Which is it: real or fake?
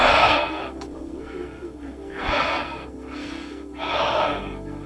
fake